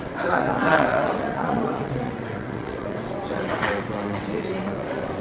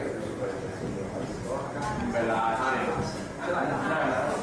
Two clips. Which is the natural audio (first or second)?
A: second